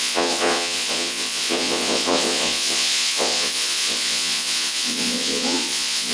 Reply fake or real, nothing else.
fake